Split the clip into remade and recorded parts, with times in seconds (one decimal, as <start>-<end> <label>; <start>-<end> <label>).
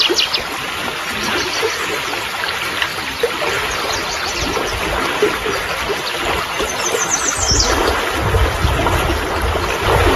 0.0-10.2 recorded